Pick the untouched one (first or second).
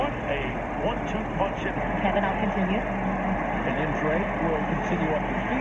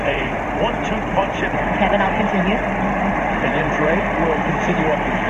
first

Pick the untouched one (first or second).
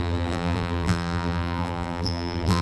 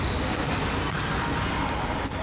second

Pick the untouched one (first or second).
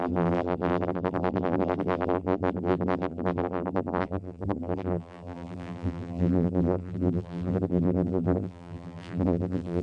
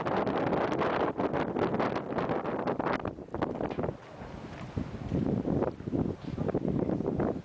second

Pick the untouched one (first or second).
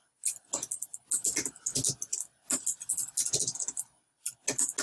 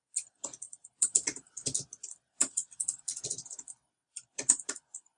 first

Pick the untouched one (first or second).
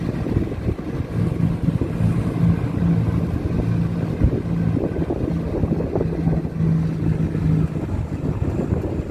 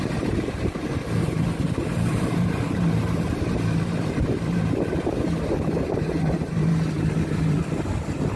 first